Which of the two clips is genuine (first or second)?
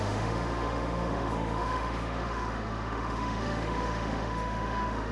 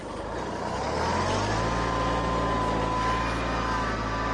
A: second